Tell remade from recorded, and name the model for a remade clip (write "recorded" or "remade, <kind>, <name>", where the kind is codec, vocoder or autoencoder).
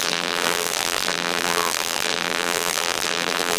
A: remade, vocoder, BigVGAN v2